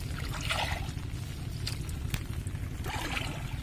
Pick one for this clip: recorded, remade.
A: recorded